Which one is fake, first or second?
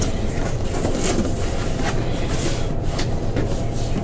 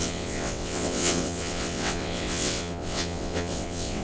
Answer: second